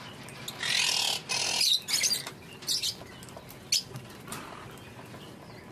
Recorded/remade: recorded